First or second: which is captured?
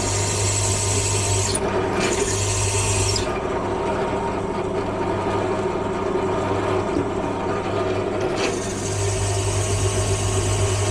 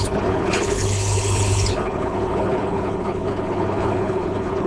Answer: first